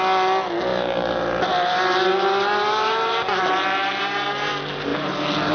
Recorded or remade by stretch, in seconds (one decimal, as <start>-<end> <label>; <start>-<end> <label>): 0.0-0.7 recorded; 0.7-4.0 remade; 4.0-4.9 recorded; 4.9-5.5 remade